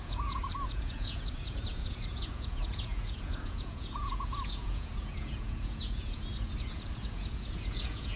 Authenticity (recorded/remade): remade